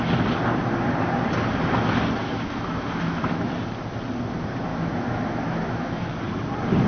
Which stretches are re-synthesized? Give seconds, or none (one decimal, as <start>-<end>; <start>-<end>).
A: 2.2-3.4; 4.7-6.0